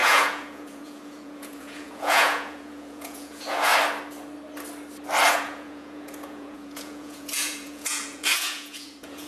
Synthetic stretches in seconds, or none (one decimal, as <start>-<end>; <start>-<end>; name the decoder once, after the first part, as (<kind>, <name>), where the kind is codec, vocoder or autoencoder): 0.0-3.7 (vocoder, Vocos); 5.3-9.3